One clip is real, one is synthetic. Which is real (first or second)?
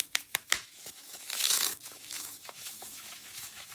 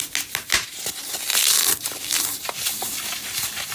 second